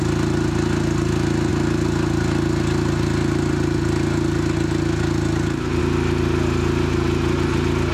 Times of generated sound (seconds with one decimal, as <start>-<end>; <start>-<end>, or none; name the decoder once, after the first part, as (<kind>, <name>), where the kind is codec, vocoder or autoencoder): none